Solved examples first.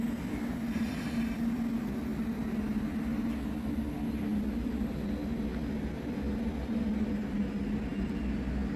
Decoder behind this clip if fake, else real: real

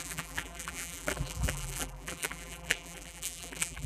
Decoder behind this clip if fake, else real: fake, vocoder, BigVGAN v2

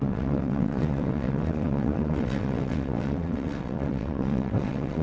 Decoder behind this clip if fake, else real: fake, vocoder, WaveNeXt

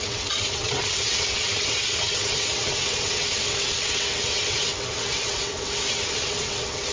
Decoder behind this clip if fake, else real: fake, vocoder, WaveNeXt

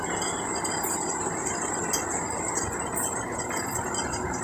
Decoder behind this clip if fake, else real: real